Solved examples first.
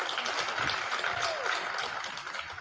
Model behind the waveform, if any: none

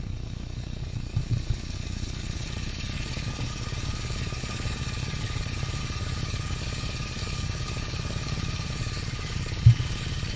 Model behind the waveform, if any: codec, DAC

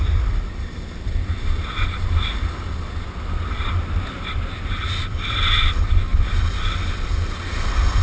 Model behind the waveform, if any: none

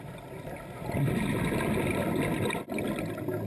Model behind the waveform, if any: none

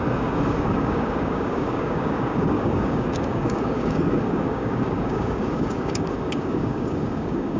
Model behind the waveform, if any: codec, DAC